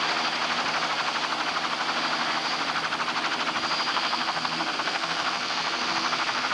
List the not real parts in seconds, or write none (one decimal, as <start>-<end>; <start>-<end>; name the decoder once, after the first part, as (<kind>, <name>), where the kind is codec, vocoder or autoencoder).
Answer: 3.9-6.5 (codec, SNAC)